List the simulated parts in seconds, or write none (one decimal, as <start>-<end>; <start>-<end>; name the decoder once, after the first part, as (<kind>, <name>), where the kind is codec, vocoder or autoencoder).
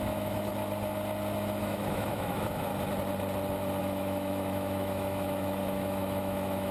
0.0-0.5 (autoencoder, DAC-VAE); 1.6-2.7; 3.8-6.7